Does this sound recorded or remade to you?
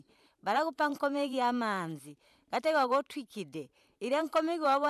remade